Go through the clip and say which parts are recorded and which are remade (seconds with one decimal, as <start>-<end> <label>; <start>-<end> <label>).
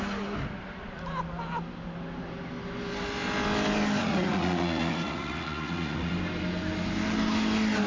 0.0-4.0 recorded; 4.0-6.1 remade; 6.1-7.9 recorded